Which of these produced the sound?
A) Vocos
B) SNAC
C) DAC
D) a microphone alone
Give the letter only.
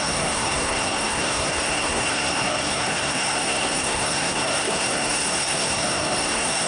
B